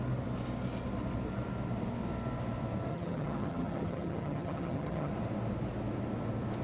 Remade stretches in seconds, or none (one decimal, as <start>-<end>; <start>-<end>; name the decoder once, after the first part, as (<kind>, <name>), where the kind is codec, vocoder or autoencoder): 2.9-5.1 (vocoder, HiFi-GAN)